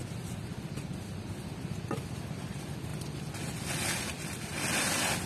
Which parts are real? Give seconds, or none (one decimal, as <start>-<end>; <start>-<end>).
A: 1.8-5.3